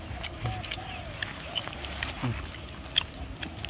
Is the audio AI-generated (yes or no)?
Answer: no